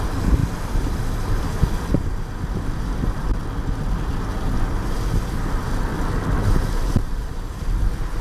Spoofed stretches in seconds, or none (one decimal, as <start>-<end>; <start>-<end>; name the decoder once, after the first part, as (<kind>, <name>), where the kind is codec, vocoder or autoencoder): 0.0-3.3 (vocoder, BigVGAN v2); 6.4-8.2